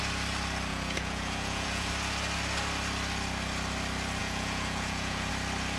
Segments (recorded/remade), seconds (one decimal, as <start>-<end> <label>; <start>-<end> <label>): 0.0-0.7 recorded; 0.7-1.9 remade; 1.9-4.2 recorded; 4.2-5.3 remade; 5.3-5.8 recorded